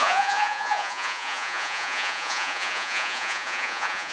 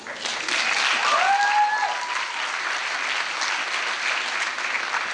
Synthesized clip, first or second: first